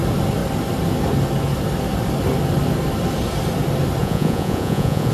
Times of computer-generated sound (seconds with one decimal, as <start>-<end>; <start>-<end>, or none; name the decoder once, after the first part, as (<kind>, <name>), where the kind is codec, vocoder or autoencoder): 4.0-5.1 (vocoder, Vocos)